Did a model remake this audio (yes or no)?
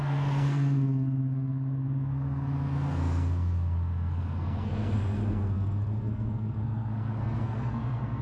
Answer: yes